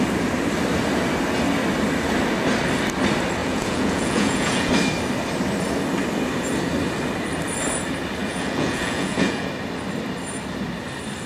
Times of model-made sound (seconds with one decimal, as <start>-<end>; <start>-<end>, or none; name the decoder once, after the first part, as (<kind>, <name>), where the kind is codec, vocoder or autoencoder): 3.4-4.7 (vocoder, Vocos); 8.2-9.5